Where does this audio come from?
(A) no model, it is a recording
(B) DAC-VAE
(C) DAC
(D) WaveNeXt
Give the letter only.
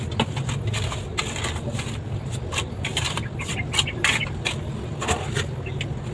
A